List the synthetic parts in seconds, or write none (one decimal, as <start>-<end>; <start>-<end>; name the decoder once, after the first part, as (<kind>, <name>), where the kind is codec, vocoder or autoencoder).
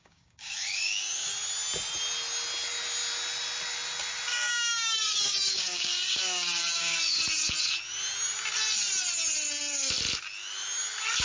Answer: 0.0-1.3 (codec, DAC); 4.3-7.2